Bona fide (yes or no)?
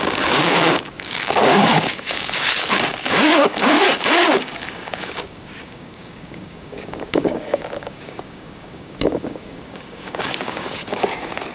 no